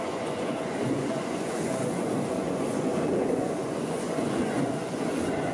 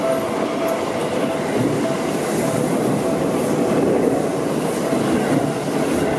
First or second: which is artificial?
first